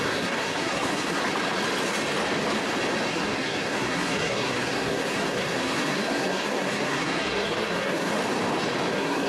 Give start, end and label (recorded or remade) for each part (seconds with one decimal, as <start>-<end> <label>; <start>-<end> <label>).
0.0-1.2 remade; 1.2-3.1 recorded; 3.1-8.1 remade; 8.1-8.9 recorded; 8.9-9.3 remade

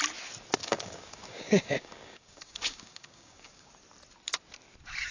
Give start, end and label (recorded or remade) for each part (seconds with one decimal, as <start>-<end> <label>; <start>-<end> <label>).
0.0-0.6 recorded; 0.6-3.7 remade; 3.7-5.1 recorded

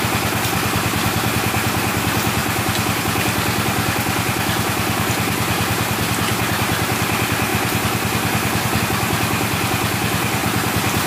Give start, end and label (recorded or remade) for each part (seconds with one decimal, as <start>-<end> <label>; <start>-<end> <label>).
0.0-10.4 recorded; 10.4-11.1 remade

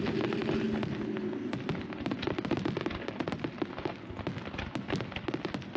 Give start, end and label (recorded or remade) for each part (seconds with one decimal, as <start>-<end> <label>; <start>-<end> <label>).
0.0-5.8 recorded